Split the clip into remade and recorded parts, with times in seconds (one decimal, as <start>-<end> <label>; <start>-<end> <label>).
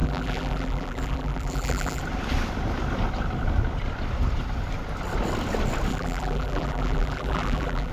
0.0-2.0 remade; 2.0-5.9 recorded; 5.9-7.9 remade